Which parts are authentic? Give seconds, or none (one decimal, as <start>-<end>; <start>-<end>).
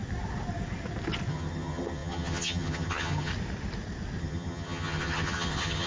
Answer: 0.0-1.3; 3.3-4.2